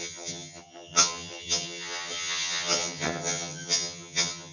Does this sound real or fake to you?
fake